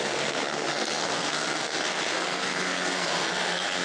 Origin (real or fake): fake